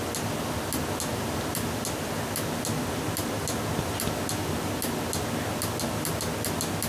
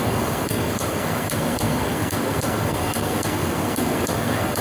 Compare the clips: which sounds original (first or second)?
first